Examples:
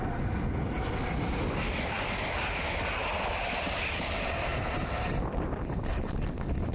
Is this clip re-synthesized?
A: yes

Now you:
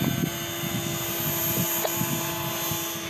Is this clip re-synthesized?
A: no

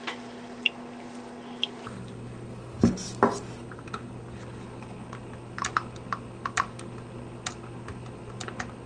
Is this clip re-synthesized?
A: no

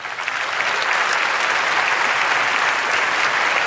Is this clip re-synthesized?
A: no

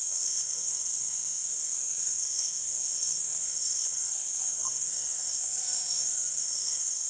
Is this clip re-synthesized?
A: yes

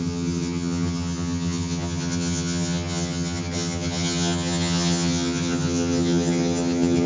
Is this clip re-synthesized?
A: yes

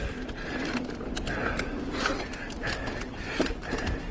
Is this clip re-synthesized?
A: no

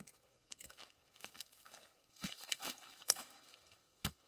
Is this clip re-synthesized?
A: yes